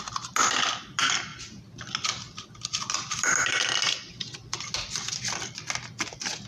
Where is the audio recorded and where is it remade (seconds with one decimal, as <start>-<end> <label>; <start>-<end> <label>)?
0.0-6.5 recorded

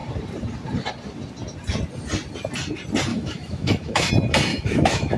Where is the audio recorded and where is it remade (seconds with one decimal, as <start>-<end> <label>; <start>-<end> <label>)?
0.0-3.1 recorded; 3.1-4.1 remade; 4.1-4.5 recorded; 4.5-5.2 remade

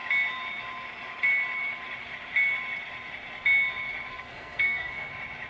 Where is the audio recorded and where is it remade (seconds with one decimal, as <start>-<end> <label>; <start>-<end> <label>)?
0.0-4.1 recorded; 4.1-5.1 remade; 5.1-5.5 recorded

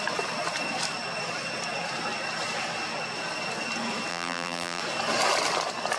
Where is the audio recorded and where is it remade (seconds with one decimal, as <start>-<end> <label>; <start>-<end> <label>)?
0.0-4.1 recorded; 4.1-4.8 remade; 4.8-6.0 recorded

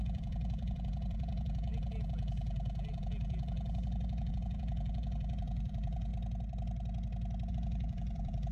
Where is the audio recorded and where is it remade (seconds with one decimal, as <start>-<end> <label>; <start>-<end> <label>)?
0.0-6.1 remade; 6.1-7.5 recorded; 7.5-8.5 remade

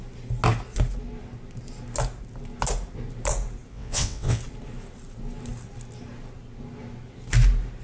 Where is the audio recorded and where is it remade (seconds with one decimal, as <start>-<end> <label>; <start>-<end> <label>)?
0.0-3.7 recorded; 3.7-4.4 remade; 4.4-7.8 recorded

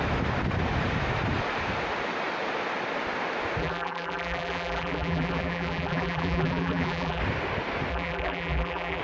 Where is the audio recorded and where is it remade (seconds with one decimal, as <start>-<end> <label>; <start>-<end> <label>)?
0.0-3.6 recorded; 3.6-7.2 remade; 7.2-7.9 recorded; 7.9-9.0 remade